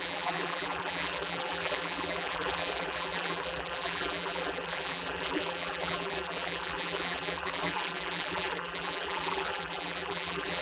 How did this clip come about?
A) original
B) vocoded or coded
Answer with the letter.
B